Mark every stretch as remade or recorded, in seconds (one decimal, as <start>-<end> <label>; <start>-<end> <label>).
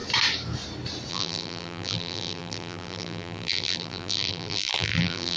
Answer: 0.0-1.1 recorded; 1.1-5.4 remade